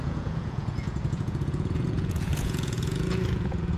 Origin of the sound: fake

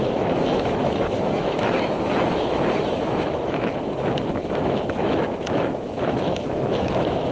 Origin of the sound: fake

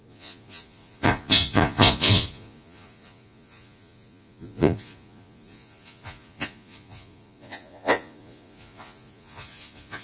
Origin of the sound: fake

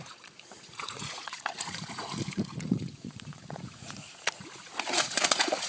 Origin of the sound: fake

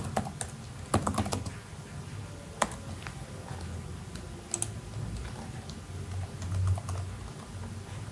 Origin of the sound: real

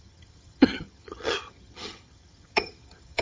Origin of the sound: fake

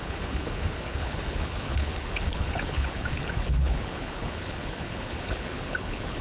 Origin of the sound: fake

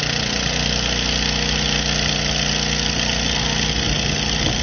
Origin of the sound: real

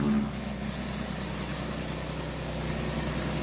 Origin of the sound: real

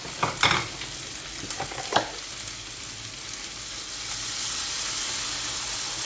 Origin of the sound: real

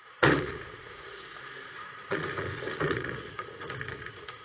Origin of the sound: fake